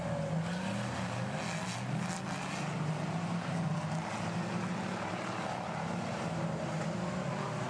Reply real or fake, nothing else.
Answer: real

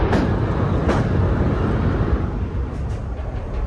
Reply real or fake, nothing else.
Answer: fake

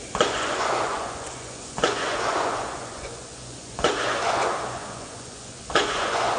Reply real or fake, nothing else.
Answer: fake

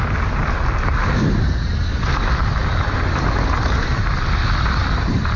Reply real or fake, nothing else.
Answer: real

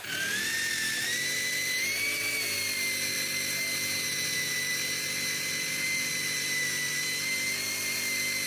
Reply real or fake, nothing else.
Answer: fake